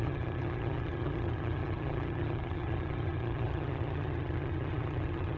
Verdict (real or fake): fake